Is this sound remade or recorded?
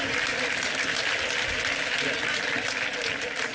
recorded